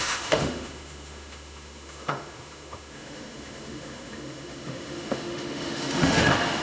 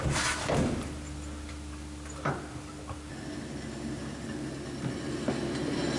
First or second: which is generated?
first